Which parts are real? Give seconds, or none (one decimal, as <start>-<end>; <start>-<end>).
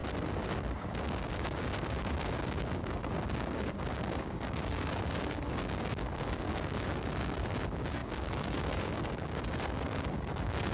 0.0-0.8